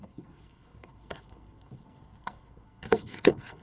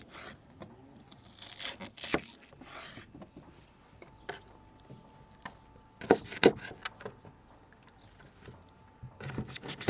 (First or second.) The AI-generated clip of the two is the first